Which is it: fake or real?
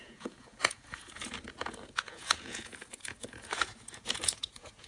fake